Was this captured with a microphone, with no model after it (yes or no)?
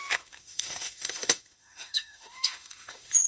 no